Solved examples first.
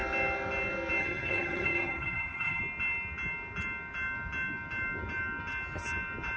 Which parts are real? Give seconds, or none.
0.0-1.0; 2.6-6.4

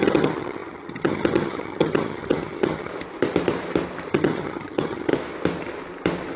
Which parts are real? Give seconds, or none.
2.9-4.1; 5.1-6.4

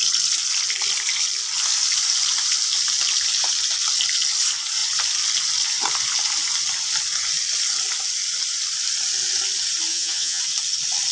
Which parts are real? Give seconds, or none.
0.0-9.9; 10.4-11.1

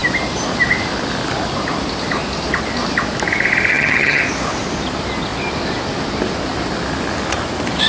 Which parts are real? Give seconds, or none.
0.0-3.7; 4.2-7.9

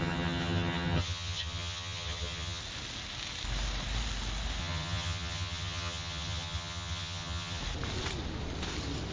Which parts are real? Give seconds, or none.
2.6-4.6; 7.6-9.1

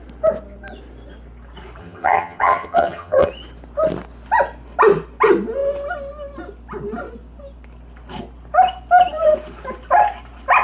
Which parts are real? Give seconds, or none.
0.0-1.8; 3.3-10.6